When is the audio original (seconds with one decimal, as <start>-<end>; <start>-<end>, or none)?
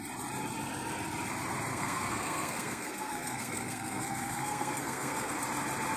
0.0-1.7; 5.3-6.0